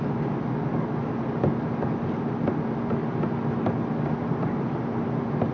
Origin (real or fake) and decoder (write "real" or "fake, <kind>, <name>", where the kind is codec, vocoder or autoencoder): real